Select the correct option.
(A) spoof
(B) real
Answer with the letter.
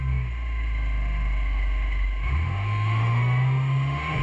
A